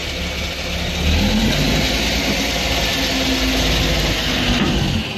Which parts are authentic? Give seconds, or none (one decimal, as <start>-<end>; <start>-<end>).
0.0-5.2